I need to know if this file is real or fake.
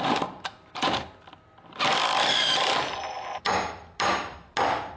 real